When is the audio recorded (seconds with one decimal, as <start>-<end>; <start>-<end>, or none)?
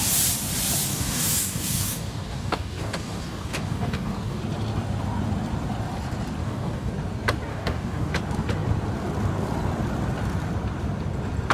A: 0.0-0.9; 4.4-6.4; 6.9-7.5; 8.1-11.5